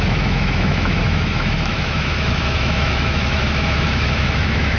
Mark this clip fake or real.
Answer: fake